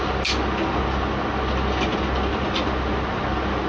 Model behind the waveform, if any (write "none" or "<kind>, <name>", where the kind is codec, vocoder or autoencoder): none